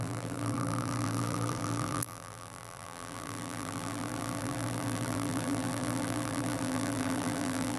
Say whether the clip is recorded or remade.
remade